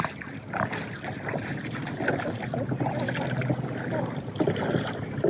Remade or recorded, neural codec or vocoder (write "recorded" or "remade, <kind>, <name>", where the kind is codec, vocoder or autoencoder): recorded